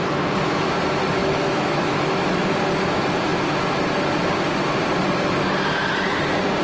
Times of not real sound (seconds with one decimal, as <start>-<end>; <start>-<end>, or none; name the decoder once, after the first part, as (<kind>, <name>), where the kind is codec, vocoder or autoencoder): 1.2-2.3 (autoencoder, DAC-VAE)